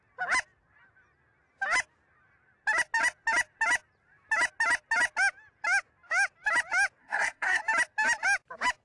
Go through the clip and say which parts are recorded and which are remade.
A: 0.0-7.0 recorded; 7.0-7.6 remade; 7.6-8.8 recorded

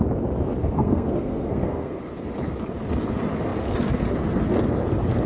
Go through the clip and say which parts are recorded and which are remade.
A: 0.0-0.6 recorded; 0.6-2.0 remade; 2.0-5.3 recorded

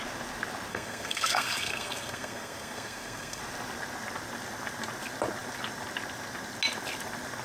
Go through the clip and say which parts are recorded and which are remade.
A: 0.0-0.7 recorded; 0.7-3.4 remade; 3.4-7.4 recorded

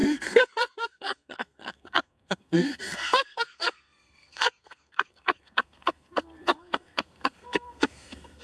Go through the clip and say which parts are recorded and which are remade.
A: 0.0-8.4 remade